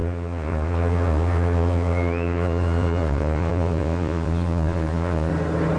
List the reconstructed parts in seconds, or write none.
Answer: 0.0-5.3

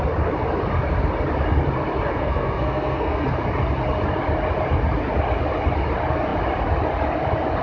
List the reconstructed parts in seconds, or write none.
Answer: 2.1-3.3

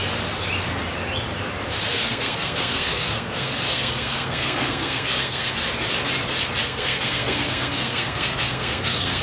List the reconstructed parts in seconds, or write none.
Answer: 1.9-5.5; 6.6-9.2